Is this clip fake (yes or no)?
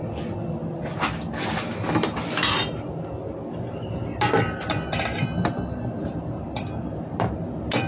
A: no